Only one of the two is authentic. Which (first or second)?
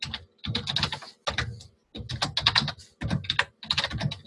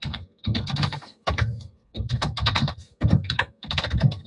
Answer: first